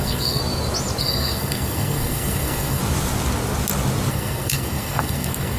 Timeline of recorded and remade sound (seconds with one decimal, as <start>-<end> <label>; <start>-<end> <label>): 0.0-0.4 remade; 0.4-1.0 recorded; 1.0-2.8 remade; 2.8-4.1 recorded; 4.1-5.6 remade